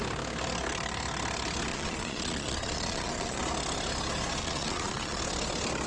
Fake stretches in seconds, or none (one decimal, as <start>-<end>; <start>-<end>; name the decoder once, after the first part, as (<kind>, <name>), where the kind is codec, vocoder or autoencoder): 1.7-3.4 (vocoder, Vocos); 4.4-5.2